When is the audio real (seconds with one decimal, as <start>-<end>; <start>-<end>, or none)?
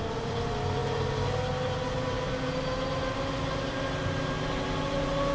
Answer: 0.0-5.3